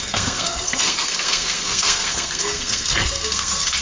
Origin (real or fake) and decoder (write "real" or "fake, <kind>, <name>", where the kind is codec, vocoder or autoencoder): fake, codec, SNAC